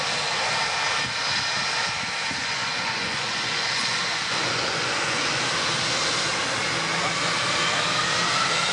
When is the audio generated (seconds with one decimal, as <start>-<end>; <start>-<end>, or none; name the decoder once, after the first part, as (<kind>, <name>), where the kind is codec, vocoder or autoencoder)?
2.4-5.4 (vocoder, Vocos)